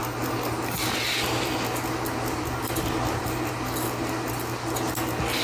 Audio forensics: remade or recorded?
recorded